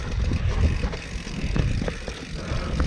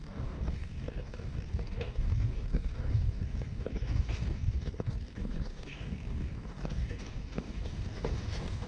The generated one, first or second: second